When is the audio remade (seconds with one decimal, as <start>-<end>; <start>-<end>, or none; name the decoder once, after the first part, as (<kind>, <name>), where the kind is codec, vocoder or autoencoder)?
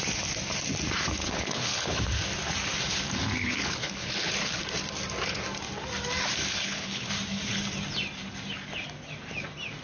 1.2-2.0 (codec, HILCodec); 3.4-4.6; 6.4-7.1